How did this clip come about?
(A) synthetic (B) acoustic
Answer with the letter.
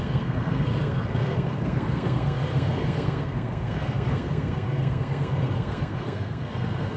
A